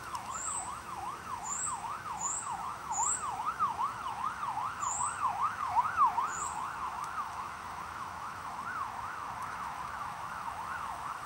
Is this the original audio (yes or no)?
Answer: no